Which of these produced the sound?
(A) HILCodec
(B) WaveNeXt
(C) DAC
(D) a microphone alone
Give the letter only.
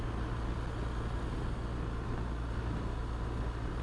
D